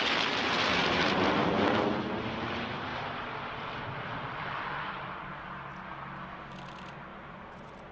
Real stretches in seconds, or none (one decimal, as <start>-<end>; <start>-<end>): 0.0-0.8; 1.6-2.9; 5.3-7.1